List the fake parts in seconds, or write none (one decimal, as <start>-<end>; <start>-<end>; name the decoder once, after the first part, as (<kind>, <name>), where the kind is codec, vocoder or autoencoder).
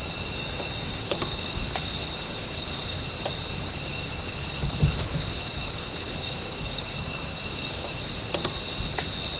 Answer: 0.8-3.1 (codec, DAC); 3.9-8.1